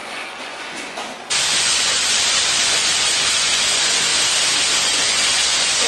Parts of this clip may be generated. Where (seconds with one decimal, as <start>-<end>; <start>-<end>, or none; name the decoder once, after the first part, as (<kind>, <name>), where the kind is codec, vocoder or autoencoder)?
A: 0.0-4.1 (vocoder, Vocos); 4.8-5.9